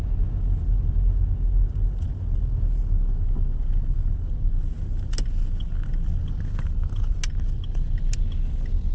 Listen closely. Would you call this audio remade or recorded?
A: recorded